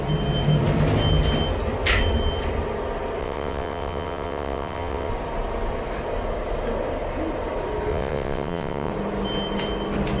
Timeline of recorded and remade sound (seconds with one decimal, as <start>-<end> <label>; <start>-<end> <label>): 0.0-3.2 recorded; 3.2-5.1 remade; 5.1-7.9 recorded; 7.9-8.9 remade; 8.9-10.2 recorded